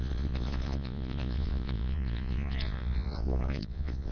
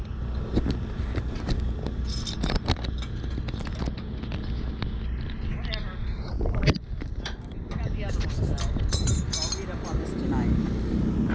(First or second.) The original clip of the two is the second